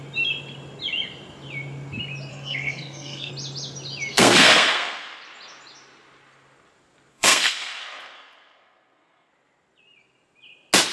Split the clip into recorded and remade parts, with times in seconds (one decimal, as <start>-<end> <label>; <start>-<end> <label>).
0.0-2.3 recorded; 2.3-3.3 remade; 3.3-4.1 recorded; 4.1-5.2 remade; 5.2-7.1 recorded; 7.1-9.3 remade; 9.3-10.9 recorded